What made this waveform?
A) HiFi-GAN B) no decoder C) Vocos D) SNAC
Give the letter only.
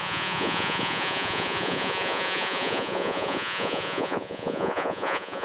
C